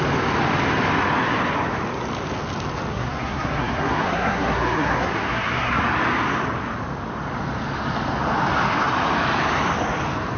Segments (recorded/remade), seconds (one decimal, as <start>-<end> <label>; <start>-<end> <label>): 0.0-2.9 recorded; 2.9-5.8 remade; 5.8-10.4 recorded